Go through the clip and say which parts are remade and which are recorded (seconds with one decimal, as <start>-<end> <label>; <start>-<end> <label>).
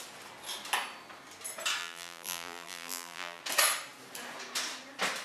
0.0-1.8 recorded; 1.8-3.4 remade; 3.4-5.2 recorded